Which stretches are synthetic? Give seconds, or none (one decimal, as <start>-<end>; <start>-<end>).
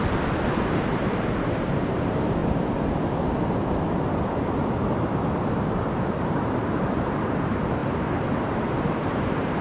0.0-2.4; 6.2-9.6